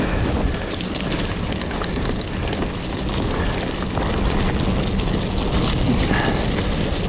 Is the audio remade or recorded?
recorded